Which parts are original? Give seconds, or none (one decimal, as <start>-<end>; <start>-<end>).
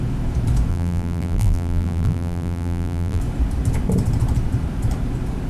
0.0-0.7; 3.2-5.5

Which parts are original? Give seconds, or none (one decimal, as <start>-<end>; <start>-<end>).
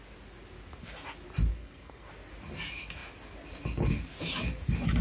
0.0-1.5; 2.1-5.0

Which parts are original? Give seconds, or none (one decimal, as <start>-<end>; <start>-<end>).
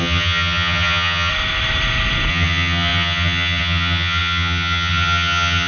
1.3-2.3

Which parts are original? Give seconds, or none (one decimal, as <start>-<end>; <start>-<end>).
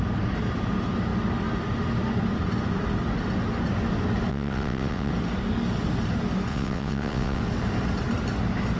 0.0-4.3; 5.1-6.5; 7.4-8.8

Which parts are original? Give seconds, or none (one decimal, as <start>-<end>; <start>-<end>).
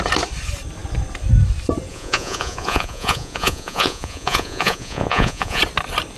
0.0-1.9; 5.6-6.2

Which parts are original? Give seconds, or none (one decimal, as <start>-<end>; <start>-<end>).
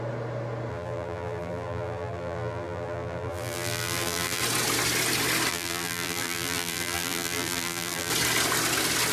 0.0-0.7; 4.4-5.5; 8.1-9.1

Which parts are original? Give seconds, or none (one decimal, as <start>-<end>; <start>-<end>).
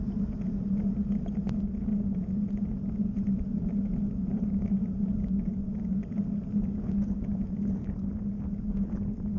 0.0-4.3; 5.1-9.4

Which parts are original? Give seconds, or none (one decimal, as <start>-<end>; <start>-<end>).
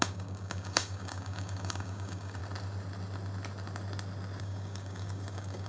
2.4-4.4